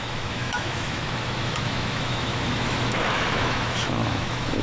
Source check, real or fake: fake